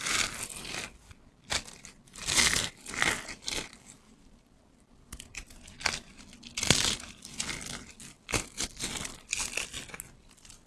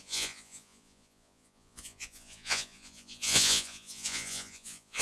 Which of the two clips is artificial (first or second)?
second